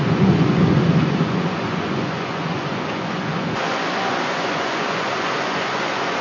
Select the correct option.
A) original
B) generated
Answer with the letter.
B